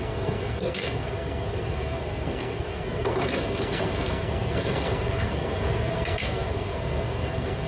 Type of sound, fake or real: fake